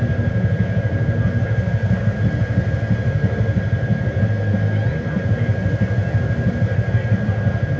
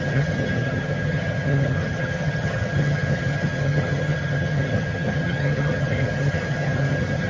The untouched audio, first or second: first